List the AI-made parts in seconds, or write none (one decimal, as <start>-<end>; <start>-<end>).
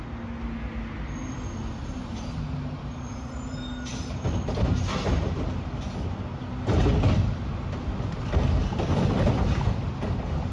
none